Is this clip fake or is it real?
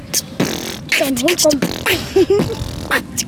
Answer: real